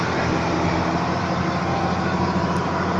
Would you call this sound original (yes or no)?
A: yes